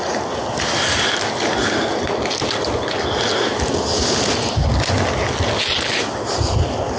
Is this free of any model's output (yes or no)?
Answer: yes